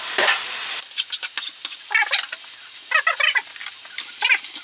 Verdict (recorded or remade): recorded